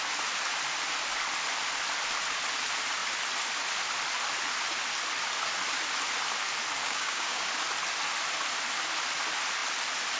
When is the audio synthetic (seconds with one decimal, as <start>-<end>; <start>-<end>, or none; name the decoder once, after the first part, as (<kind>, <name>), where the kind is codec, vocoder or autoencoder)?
6.8-7.5 (codec, DAC)